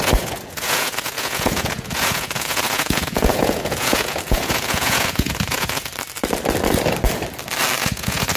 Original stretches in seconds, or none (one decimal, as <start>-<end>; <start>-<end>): 5.9-7.8